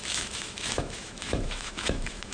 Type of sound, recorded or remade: remade